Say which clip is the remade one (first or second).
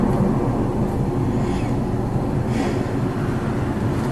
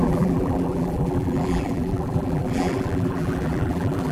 second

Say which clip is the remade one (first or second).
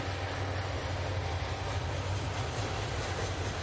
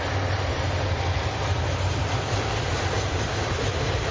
second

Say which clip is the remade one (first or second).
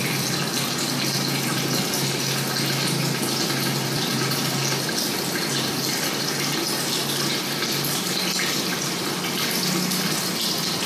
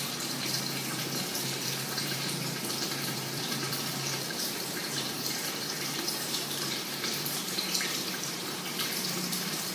second